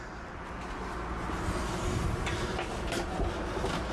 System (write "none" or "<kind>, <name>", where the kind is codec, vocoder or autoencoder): none